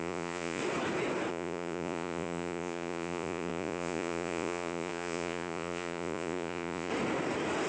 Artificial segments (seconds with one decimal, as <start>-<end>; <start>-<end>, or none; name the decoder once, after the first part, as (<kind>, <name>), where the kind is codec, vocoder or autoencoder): 0.0-0.6 (vocoder, Vocos); 1.3-6.9